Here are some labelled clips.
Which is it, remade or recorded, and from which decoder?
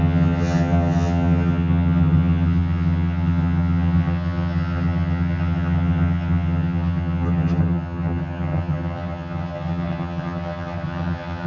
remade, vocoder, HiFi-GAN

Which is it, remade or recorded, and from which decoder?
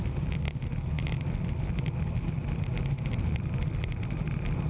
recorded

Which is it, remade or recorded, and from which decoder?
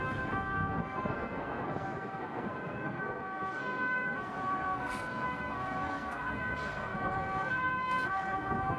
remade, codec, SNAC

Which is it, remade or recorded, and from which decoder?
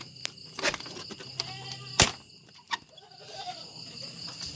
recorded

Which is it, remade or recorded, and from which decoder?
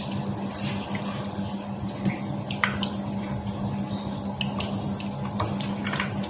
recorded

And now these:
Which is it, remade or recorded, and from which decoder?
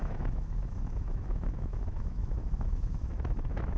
remade, autoencoder, DAC-VAE